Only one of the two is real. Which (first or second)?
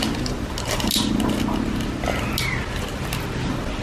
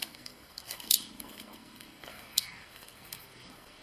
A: first